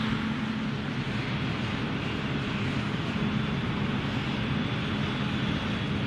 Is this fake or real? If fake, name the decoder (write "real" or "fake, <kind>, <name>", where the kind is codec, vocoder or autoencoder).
real